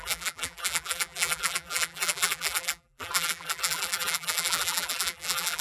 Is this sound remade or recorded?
remade